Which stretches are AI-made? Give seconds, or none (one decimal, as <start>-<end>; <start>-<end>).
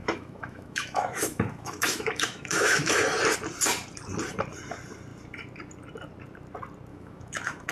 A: 0.0-3.0; 6.9-7.7